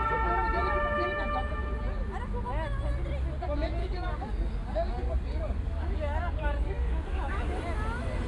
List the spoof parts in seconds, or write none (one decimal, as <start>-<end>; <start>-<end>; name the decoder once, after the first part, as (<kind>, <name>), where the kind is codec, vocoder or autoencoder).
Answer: 3.8-7.6 (codec, DAC)